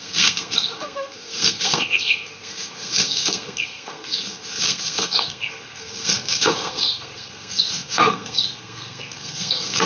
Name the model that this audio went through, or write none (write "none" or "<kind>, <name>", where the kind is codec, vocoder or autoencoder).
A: codec, SNAC